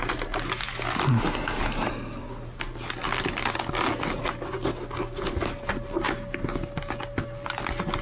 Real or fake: real